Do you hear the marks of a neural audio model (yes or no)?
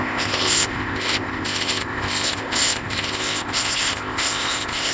yes